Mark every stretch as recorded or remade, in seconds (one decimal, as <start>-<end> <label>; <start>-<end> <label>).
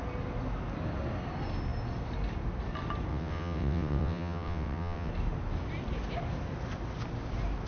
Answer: 0.0-3.1 recorded; 3.1-5.1 remade; 5.1-7.7 recorded